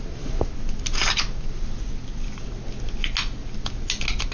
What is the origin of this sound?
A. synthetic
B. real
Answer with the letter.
B